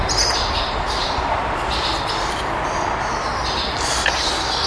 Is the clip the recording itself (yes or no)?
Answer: yes